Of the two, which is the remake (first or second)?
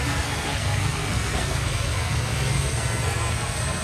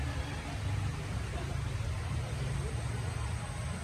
first